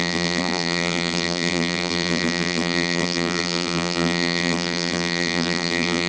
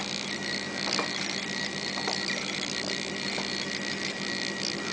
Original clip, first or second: second